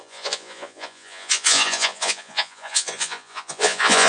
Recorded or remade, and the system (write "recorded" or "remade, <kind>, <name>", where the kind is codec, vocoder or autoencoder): remade, vocoder, Vocos